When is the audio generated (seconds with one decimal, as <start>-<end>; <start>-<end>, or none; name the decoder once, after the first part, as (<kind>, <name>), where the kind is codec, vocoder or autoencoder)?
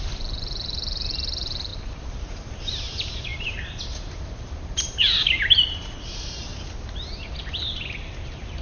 0.0-6.5 (vocoder, BigVGAN v2); 8.1-8.6